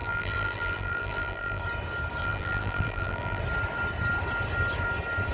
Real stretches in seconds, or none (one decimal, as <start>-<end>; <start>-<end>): 1.6-2.2; 3.4-5.3